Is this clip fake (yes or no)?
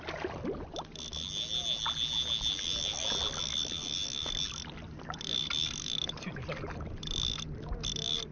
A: no